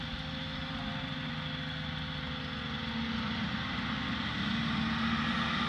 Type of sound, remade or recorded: recorded